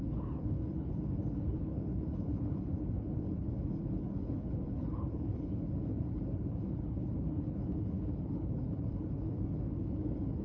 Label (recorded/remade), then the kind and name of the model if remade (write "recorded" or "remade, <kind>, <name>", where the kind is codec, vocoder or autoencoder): remade, codec, HILCodec